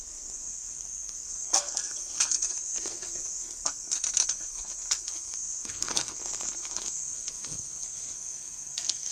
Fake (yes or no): yes